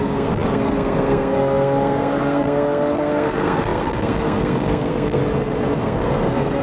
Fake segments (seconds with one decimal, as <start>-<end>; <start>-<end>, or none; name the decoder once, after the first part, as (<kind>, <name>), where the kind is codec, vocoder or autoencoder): 0.0-5.2 (codec, SNAC); 5.8-6.6